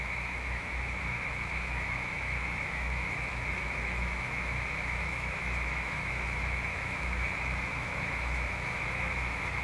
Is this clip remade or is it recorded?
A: remade